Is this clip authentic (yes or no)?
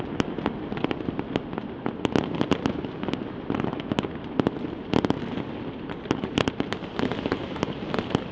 no